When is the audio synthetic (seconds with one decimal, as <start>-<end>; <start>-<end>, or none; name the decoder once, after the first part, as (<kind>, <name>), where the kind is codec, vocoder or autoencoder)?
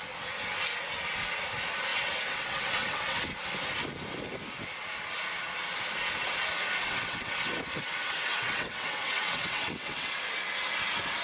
1.9-3.2 (vocoder, WaveNeXt); 6.8-10.1